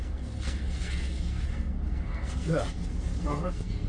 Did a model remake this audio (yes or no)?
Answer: yes